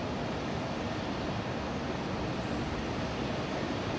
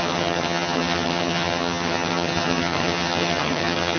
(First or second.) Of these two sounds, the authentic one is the first